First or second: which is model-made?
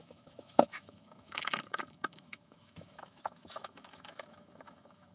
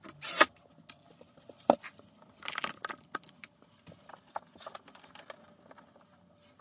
first